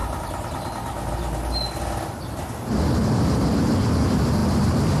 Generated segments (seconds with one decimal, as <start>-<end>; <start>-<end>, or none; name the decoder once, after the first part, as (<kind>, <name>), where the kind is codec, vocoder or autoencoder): none